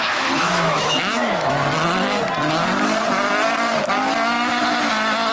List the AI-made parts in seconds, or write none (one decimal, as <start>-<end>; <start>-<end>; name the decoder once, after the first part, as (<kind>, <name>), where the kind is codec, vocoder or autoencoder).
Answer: 0.0-1.7 (autoencoder, DAC-VAE)